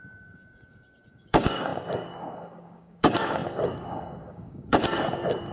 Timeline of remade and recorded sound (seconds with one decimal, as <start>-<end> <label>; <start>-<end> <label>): 0.0-5.5 remade